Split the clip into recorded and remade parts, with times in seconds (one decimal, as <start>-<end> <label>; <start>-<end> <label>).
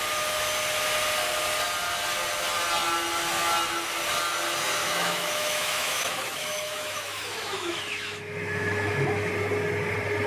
0.0-4.8 recorded; 4.8-9.3 remade; 9.3-10.3 recorded